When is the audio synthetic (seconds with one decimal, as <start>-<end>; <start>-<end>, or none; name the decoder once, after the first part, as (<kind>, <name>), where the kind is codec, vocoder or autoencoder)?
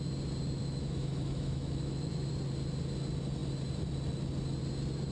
0.6-2.3 (autoencoder, DAC-VAE)